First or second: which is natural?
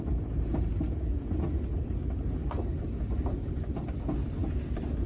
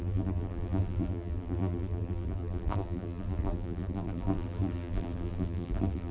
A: first